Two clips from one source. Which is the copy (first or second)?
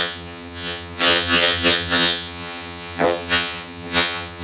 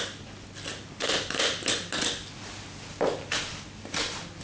first